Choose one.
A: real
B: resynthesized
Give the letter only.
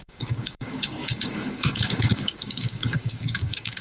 B